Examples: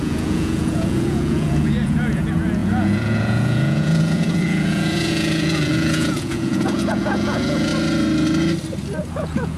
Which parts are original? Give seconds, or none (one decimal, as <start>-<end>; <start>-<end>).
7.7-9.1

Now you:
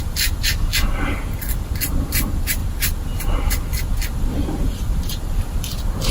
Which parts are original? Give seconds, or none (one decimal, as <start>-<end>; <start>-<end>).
0.7-1.9

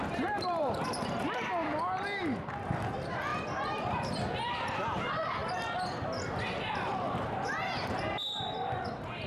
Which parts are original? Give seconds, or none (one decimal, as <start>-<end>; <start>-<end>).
1.2-9.3

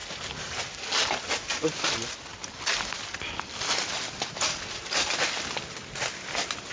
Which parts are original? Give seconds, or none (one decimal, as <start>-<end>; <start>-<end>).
0.0-6.7